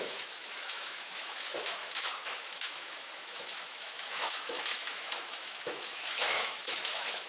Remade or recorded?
remade